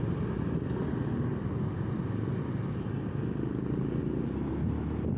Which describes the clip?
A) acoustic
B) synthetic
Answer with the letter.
A